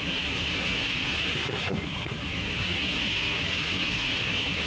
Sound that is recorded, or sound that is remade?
remade